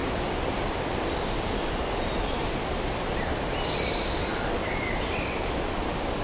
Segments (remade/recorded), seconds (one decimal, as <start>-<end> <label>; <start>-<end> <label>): 0.0-3.7 remade; 3.7-4.3 recorded; 4.3-5.0 remade; 5.0-6.2 recorded